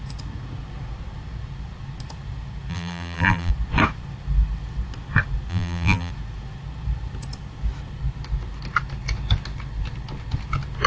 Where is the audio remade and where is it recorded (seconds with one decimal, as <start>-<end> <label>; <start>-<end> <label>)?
0.0-2.7 recorded; 2.7-3.5 remade; 3.5-5.5 recorded; 5.5-6.1 remade; 6.1-10.9 recorded